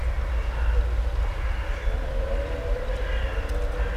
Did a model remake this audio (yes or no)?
no